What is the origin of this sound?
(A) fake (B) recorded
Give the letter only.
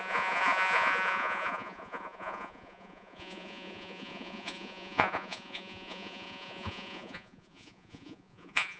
A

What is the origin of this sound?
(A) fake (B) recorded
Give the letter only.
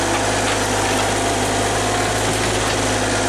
B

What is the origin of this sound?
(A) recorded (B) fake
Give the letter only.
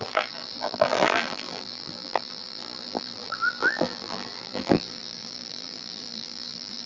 B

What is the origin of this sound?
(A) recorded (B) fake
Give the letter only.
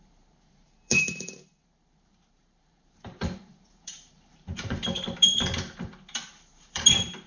B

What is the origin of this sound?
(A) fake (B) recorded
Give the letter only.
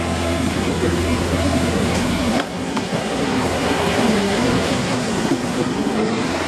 A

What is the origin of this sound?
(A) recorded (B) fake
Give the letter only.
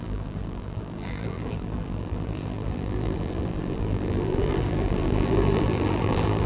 B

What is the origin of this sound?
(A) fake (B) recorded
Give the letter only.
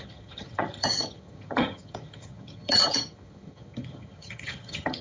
A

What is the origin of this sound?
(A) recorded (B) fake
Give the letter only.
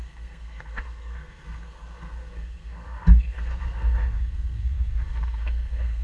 B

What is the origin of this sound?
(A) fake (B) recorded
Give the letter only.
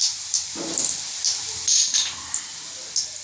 B